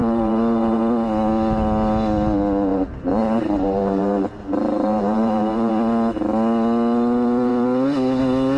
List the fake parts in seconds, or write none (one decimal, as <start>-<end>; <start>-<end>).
0.0-0.8; 2.7-5.7